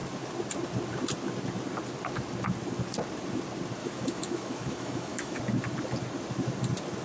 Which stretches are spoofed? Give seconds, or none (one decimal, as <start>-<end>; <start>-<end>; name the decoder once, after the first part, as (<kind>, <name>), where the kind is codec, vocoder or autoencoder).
3.8-5.4 (autoencoder, DAC-VAE)